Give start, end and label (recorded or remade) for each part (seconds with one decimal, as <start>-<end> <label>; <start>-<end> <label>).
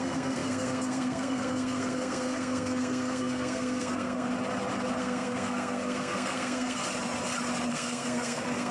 0.0-4.3 remade; 4.3-5.0 recorded; 5.0-6.8 remade; 6.8-7.7 recorded; 7.7-8.7 remade